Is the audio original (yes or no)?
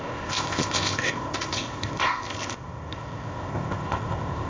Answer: no